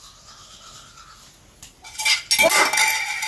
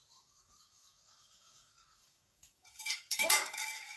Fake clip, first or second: second